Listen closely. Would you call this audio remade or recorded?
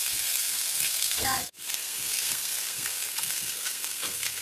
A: remade